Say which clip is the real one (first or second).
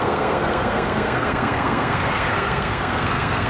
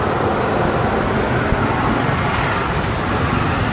second